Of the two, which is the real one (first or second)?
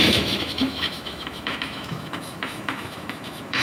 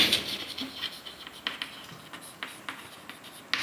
second